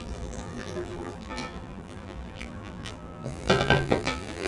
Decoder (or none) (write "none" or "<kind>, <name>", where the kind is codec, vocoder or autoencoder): vocoder, BigVGAN v2